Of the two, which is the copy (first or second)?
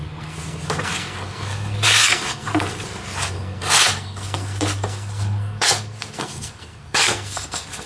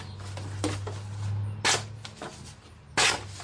first